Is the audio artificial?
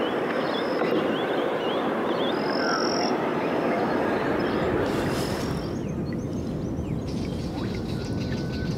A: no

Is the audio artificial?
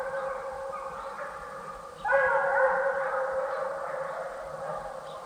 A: no